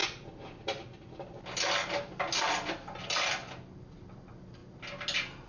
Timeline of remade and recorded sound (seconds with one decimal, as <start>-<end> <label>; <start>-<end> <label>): 0.0-5.5 recorded